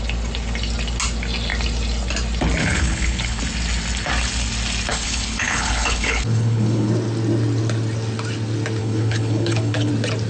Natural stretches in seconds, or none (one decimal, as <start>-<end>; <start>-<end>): 0.0-2.6; 3.4-4.9; 6.9-8.8; 9.9-10.3